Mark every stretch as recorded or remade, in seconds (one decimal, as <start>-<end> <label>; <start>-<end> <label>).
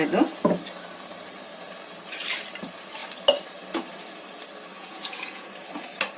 0.0-4.8 recorded; 4.8-5.5 remade; 5.5-6.2 recorded